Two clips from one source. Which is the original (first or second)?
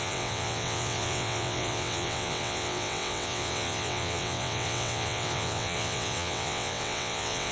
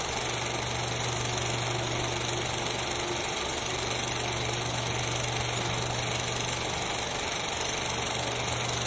second